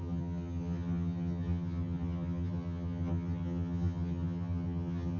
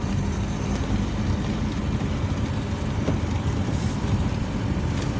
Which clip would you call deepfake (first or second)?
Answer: first